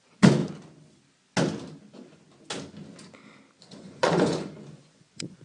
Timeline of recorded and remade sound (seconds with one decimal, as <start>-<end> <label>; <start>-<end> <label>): 0.0-0.4 remade; 0.4-3.6 recorded; 3.6-5.4 remade